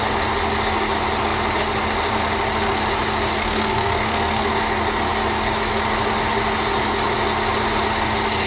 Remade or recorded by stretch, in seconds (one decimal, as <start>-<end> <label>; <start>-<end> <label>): 0.0-3.4 recorded; 3.4-4.5 remade; 4.5-8.5 recorded